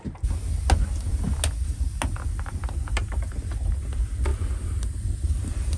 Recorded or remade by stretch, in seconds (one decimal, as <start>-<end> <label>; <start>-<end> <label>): 0.0-5.8 recorded